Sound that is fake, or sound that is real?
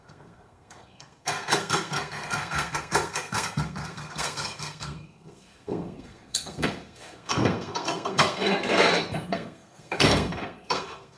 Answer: fake